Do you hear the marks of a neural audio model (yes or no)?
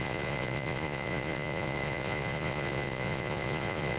yes